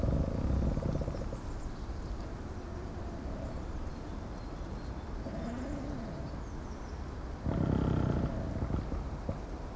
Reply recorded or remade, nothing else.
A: recorded